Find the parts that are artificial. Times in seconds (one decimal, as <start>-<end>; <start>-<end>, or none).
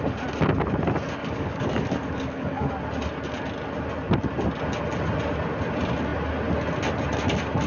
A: 1.2-2.7